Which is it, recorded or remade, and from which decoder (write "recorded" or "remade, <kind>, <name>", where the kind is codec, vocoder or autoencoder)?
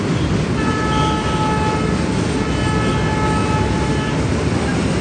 recorded